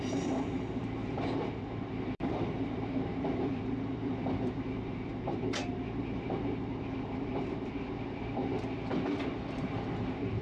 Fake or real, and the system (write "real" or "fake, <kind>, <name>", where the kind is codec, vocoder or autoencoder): fake, vocoder, BigVGAN v2